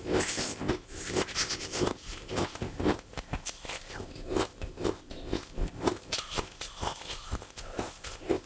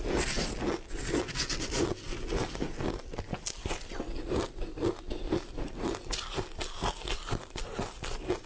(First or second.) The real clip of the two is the second